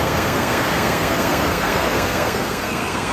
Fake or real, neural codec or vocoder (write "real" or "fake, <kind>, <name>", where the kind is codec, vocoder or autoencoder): fake, codec, SNAC